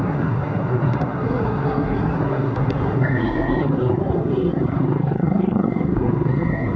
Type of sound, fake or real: fake